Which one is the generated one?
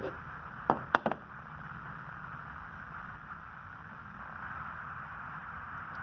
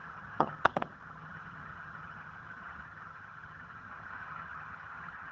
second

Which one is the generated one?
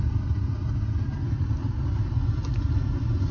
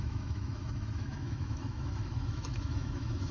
second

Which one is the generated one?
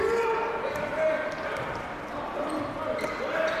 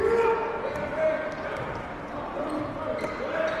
first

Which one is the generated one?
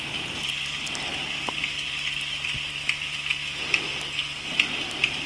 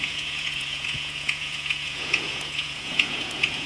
second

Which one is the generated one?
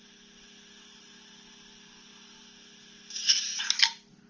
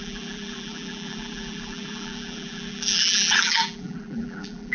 second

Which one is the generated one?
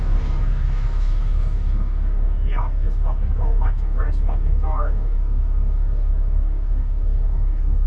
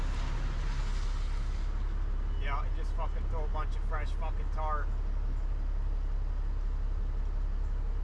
first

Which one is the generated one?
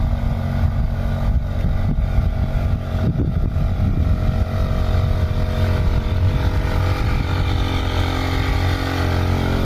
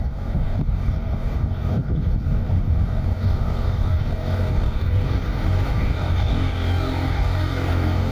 second